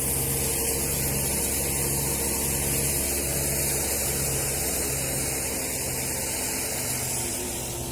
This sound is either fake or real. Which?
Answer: real